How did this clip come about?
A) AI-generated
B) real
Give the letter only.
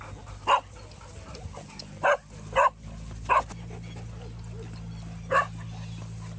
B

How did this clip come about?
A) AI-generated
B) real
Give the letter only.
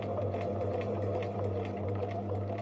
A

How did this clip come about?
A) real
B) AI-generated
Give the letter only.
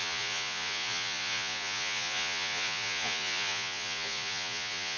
B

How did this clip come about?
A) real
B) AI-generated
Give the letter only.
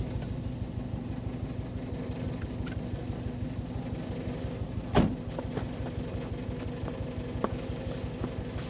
A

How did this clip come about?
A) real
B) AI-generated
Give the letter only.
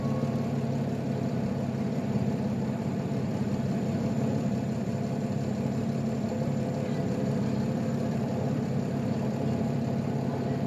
B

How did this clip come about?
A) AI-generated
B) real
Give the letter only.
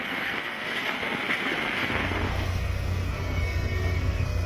A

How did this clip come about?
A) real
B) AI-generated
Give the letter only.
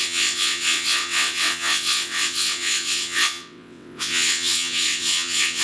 B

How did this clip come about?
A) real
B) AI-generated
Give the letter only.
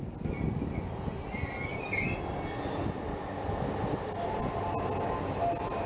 A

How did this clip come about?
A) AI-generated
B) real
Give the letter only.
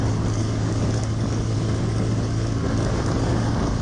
A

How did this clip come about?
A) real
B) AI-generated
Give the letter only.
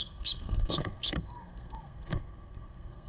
B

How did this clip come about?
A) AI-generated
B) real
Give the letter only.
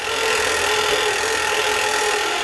B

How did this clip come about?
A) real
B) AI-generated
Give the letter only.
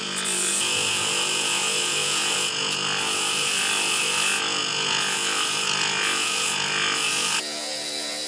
B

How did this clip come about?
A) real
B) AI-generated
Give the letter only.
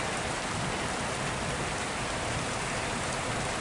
B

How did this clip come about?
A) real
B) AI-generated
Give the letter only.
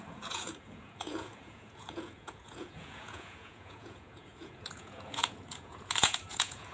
B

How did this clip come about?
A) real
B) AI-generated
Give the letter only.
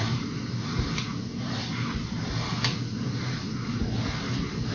A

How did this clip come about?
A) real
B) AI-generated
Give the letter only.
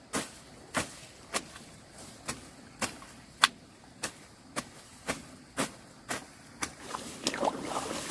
A